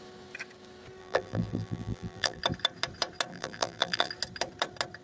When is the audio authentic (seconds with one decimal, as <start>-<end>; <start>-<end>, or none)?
0.0-1.0; 2.4-3.3; 4.1-5.0